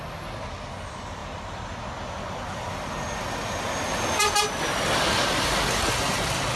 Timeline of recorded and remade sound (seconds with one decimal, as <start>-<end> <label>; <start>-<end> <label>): 0.0-6.6 recorded